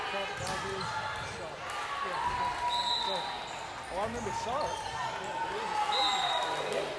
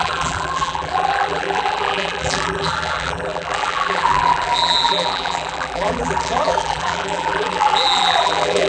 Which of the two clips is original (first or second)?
first